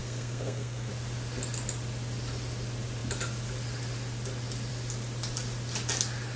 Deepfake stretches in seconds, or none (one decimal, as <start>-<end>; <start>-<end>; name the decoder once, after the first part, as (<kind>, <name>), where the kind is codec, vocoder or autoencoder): 0.0-0.9 (codec, SNAC)